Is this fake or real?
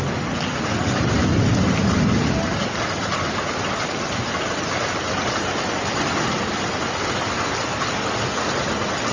real